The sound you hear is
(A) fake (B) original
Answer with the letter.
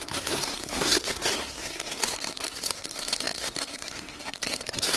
A